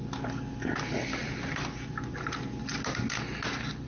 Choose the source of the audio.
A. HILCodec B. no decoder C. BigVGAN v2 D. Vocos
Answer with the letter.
B